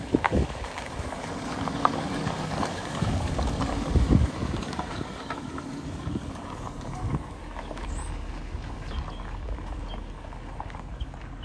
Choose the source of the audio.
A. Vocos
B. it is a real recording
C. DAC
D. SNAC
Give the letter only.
C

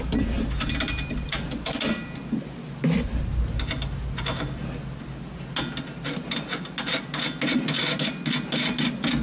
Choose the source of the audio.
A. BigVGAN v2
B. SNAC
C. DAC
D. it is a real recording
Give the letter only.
D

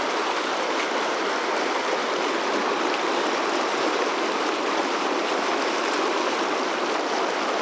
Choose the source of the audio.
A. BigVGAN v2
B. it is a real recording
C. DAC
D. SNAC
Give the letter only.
B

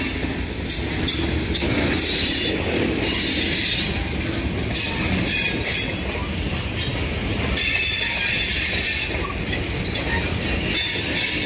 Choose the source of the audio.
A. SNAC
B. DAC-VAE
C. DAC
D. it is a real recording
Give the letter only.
D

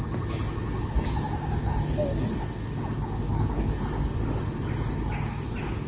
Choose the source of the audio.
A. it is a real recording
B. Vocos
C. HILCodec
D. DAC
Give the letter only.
A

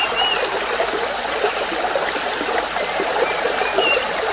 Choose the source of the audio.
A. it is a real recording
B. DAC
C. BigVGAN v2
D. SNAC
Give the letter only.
A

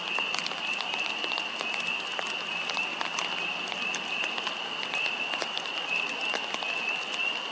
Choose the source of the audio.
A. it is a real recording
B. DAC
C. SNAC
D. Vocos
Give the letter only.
A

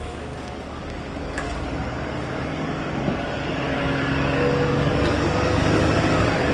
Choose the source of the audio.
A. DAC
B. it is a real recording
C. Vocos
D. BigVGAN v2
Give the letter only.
A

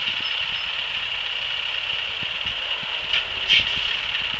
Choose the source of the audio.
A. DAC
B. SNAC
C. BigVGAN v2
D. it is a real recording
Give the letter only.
D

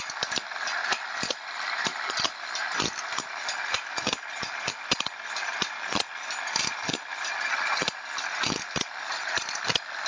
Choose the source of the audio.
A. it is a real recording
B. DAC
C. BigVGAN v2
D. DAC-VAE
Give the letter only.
A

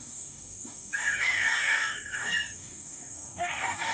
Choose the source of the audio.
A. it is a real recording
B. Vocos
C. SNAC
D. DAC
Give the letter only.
D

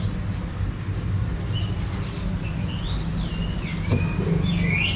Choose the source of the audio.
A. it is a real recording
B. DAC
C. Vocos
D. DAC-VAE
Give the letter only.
A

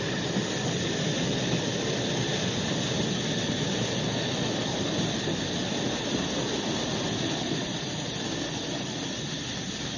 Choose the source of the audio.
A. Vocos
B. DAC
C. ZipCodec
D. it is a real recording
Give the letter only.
D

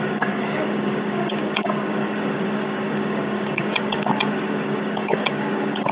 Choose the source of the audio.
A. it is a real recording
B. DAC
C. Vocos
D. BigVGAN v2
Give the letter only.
B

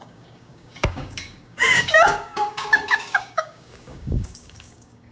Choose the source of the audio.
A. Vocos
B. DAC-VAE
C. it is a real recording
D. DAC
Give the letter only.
D